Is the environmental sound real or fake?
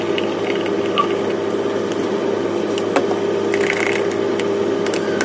real